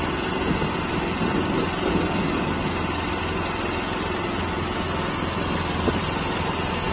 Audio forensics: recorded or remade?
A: recorded